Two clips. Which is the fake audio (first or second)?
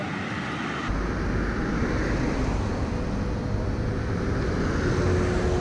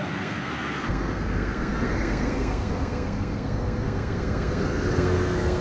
second